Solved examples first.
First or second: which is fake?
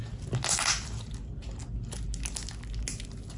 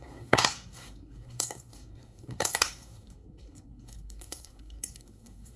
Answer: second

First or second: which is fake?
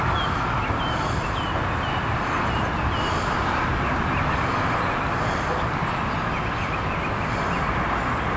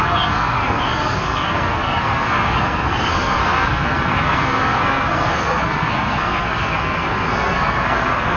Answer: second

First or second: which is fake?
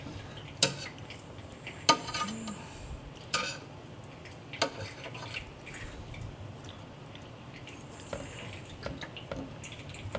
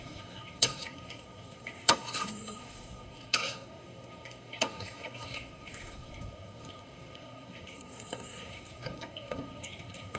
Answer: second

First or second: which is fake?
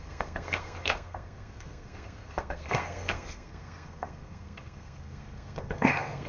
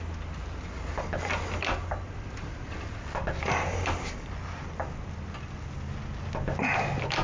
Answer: first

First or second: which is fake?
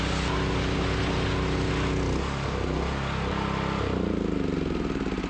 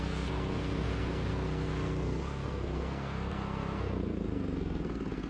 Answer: second